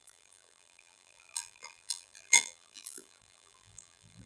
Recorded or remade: remade